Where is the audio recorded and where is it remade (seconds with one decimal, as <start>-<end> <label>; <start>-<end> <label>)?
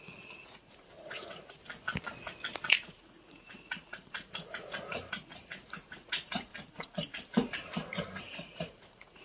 0.0-1.6 remade; 1.6-2.7 recorded; 2.7-6.5 remade; 6.5-8.2 recorded; 8.2-9.2 remade